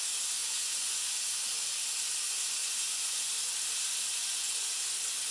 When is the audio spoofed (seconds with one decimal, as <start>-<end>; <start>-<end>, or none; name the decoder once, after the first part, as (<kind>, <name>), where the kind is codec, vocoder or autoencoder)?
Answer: 0.4-1.1 (vocoder, Vocos); 2.6-3.5; 4.2-4.8